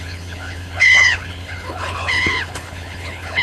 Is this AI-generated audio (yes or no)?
yes